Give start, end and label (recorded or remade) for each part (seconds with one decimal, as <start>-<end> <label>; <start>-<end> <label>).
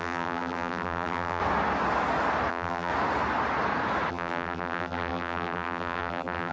0.0-1.4 remade; 1.4-2.5 recorded; 2.5-2.9 remade; 2.9-4.1 recorded; 4.1-6.5 remade